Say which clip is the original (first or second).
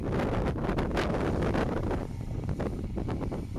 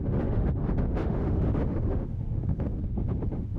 first